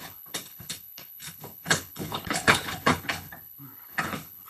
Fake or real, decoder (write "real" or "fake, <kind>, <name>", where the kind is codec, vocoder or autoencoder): fake, codec, HILCodec